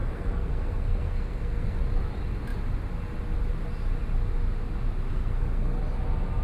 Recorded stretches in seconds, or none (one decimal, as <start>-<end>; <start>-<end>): 1.8-5.1; 5.8-6.4